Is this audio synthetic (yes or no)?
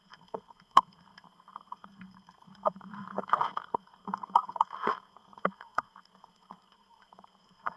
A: yes